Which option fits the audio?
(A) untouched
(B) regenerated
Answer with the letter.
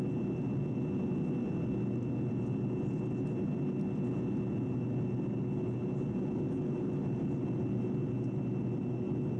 A